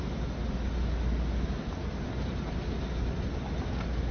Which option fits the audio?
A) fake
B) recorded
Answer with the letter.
B